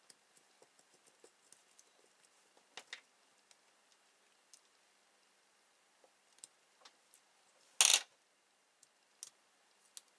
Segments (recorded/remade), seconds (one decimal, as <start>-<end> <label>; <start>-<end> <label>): 0.0-10.2 recorded